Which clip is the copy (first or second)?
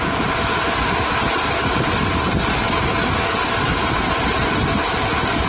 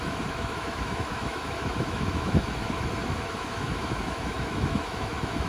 second